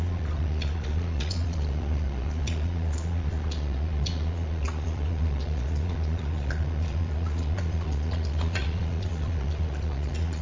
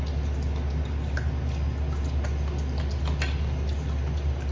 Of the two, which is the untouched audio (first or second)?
second